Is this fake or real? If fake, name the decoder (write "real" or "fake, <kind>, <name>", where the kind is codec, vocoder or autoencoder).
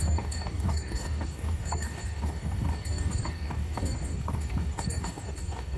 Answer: fake, codec, DAC